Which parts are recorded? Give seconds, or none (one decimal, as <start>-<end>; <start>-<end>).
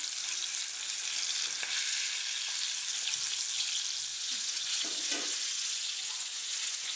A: 0.0-4.1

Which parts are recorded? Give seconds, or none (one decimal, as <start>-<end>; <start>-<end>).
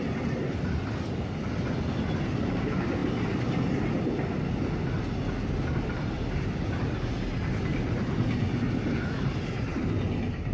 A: 0.0-10.5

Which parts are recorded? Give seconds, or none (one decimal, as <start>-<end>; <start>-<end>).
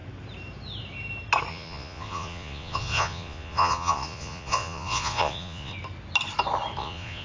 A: 0.0-1.5; 5.7-6.8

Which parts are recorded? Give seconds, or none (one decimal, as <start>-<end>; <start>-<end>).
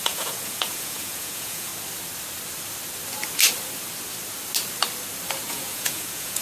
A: 1.7-5.5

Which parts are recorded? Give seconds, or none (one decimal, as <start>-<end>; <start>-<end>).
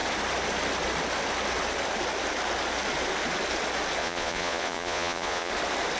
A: 0.0-4.0; 5.5-6.0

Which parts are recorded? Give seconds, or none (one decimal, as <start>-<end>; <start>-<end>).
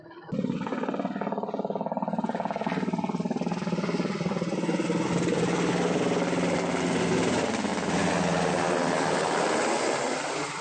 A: 0.0-10.6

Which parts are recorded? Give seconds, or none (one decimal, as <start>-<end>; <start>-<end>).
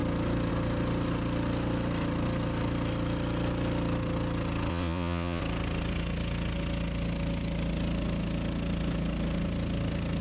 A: 0.0-4.7; 5.4-10.2